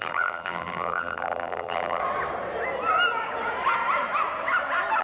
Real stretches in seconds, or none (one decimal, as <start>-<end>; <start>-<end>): 2.0-5.0